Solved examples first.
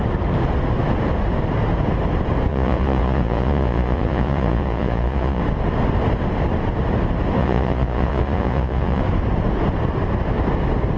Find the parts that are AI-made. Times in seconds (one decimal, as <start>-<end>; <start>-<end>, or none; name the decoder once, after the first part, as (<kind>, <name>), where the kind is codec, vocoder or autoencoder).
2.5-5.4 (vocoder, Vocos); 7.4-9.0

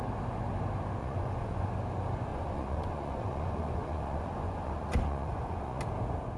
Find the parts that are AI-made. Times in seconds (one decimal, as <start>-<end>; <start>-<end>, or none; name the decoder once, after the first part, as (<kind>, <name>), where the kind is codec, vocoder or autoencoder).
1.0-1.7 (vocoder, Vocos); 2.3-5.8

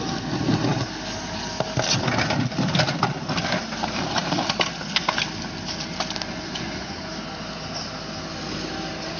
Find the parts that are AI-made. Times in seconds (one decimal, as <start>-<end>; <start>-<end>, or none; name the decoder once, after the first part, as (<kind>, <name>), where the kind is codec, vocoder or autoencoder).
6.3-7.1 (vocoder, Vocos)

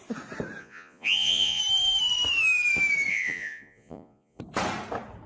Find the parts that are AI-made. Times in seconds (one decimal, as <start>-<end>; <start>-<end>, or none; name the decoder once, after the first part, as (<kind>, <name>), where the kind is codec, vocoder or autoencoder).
0.6-1.6 (vocoder, Vocos); 3.1-4.4

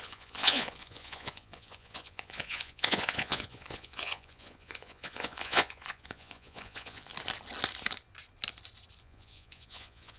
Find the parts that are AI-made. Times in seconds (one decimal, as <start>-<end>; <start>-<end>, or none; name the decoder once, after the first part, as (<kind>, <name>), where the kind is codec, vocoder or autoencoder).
0.0-7.1 (vocoder, Vocos); 9.0-10.2

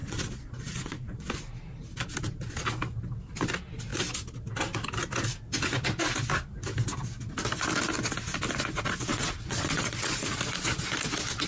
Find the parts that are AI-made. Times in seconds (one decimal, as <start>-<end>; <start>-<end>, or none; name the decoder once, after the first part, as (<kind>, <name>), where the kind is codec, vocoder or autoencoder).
0.0-1.3 (vocoder, Vocos); 9.1-10.4

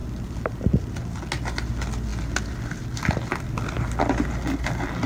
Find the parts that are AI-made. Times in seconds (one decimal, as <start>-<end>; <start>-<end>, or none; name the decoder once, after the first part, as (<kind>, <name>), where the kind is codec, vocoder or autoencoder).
none